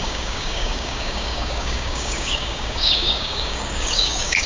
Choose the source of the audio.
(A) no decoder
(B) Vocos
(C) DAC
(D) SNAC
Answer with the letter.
C